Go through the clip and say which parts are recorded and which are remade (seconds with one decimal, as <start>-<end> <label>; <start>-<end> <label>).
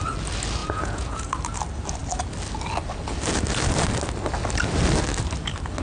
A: 0.0-0.6 recorded; 0.6-1.3 remade; 1.3-5.8 recorded